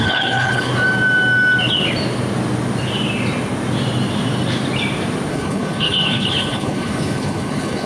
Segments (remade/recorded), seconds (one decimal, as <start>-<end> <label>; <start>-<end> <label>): 0.0-0.7 remade; 0.7-5.3 recorded; 5.3-7.9 remade